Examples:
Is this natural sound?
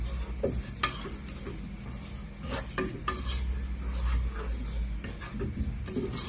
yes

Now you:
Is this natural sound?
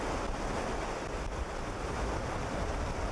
yes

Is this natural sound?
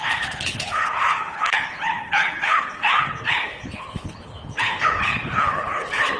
no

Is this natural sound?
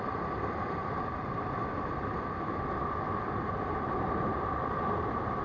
yes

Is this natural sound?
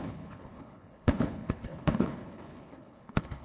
no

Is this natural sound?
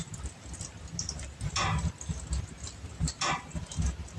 yes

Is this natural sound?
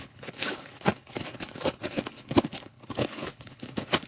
no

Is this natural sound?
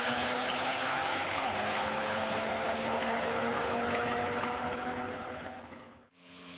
no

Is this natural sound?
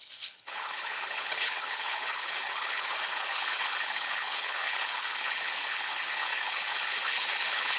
no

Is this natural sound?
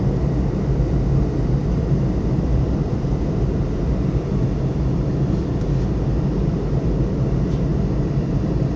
yes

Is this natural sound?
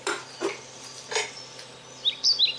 yes